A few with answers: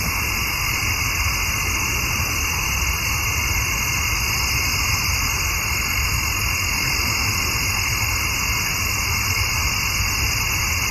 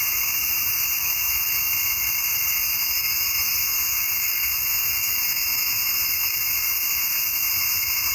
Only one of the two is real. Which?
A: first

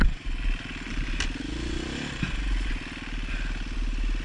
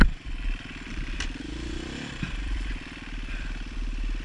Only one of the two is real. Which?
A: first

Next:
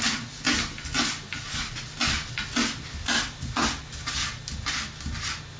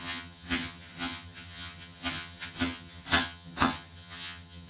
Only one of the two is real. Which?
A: first